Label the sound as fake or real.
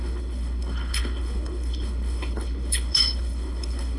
fake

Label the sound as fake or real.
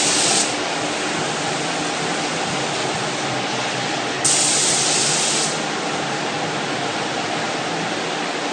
real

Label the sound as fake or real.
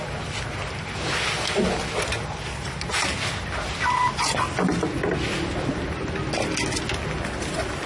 real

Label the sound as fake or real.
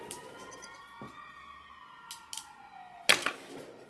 real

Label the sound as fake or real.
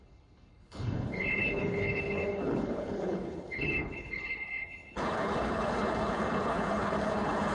fake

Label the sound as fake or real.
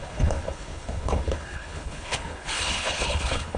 fake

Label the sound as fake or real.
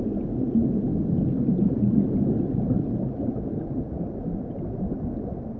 real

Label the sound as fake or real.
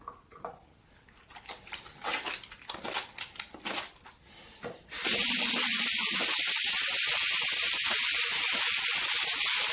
real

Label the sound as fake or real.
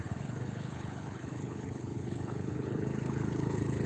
fake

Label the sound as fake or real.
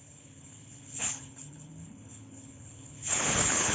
fake